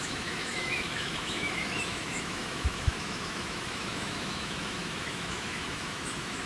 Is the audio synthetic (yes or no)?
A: yes